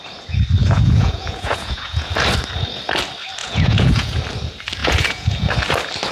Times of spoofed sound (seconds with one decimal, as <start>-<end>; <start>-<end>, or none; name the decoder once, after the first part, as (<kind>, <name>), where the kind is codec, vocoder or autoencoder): 0.6-2.1 (vocoder, Vocos); 3.4-4.2; 4.8-5.5